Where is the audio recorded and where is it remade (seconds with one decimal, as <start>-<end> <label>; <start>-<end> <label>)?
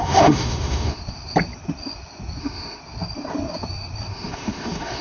0.0-1.0 remade; 1.0-2.4 recorded; 2.4-2.8 remade; 2.8-4.1 recorded; 4.1-5.0 remade